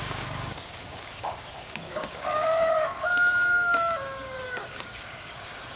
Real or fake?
fake